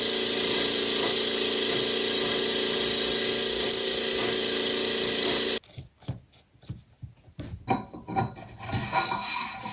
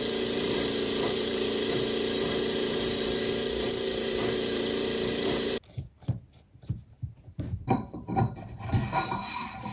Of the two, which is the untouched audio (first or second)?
first